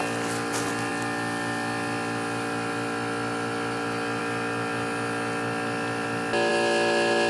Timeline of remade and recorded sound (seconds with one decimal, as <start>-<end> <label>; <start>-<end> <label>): 0.0-7.3 recorded